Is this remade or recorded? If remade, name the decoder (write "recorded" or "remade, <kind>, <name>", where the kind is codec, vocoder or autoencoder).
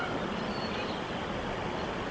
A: recorded